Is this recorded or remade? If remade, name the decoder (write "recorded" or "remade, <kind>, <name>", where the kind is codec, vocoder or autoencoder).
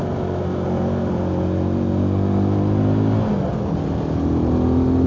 recorded